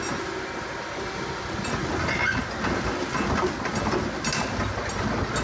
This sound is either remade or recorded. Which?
recorded